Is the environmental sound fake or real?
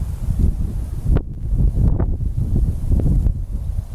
real